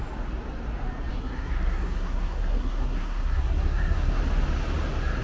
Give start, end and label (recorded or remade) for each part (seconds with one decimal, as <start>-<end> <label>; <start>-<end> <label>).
0.0-1.1 recorded; 1.1-4.2 remade; 4.2-5.2 recorded